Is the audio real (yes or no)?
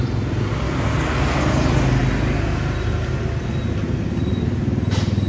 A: yes